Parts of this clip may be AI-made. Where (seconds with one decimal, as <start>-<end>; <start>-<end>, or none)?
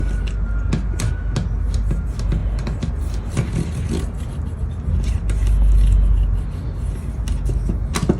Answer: none